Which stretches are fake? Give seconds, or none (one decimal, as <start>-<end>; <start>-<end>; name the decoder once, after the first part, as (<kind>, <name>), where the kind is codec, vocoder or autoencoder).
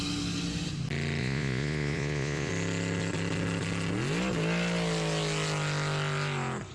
1.2-2.5 (vocoder, Vocos)